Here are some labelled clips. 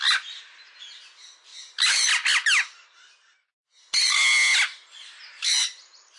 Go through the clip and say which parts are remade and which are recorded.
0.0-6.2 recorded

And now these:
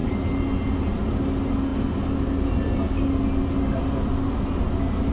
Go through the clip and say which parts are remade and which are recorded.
0.0-5.1 recorded

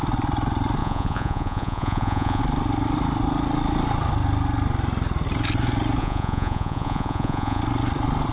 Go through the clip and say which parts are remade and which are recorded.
0.0-0.8 recorded; 0.8-2.4 remade; 2.4-6.0 recorded; 6.0-7.6 remade; 7.6-8.3 recorded

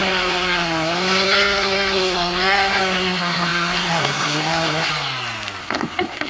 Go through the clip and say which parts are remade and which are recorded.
0.0-4.9 remade; 4.9-5.6 recorded; 5.6-6.3 remade